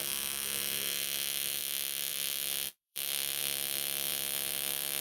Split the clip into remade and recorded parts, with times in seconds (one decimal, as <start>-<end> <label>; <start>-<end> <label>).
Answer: 0.0-1.6 remade; 1.6-2.1 recorded; 2.1-5.0 remade